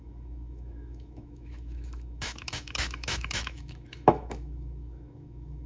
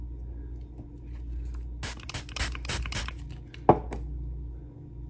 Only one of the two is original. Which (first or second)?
second